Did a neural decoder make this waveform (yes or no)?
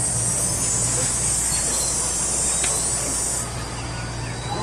no